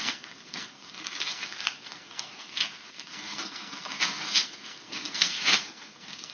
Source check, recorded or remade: remade